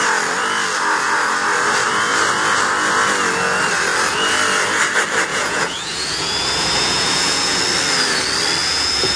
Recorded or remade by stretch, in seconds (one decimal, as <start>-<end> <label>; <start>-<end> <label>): 0.0-5.3 recorded; 5.3-7.6 remade; 7.6-8.6 recorded; 8.6-9.2 remade